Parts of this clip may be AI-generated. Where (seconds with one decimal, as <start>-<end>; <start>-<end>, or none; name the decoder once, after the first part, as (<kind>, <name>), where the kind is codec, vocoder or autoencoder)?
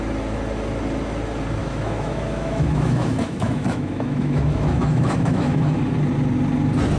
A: 1.6-5.8 (autoencoder, DAC-VAE)